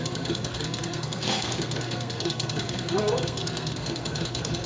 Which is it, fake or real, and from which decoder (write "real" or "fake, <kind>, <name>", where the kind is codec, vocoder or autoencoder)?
fake, codec, SNAC